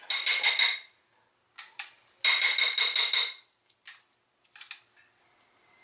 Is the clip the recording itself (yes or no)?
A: yes